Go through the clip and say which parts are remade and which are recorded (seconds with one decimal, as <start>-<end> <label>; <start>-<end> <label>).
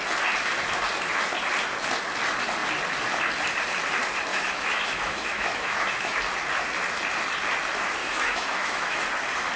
0.0-4.3 recorded; 4.3-6.2 remade; 6.2-8.0 recorded; 8.0-9.0 remade; 9.0-9.6 recorded